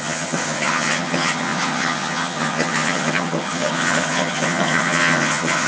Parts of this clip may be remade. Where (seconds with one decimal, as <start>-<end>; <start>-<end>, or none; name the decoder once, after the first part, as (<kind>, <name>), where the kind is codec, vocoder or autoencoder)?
0.0-5.7 (vocoder, HiFi-GAN)